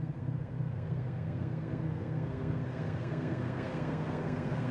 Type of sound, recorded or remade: remade